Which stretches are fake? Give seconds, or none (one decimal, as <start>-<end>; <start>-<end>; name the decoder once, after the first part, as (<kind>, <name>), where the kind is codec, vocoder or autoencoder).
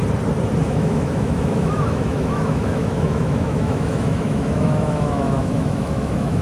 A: 0.6-6.4 (autoencoder, DAC-VAE)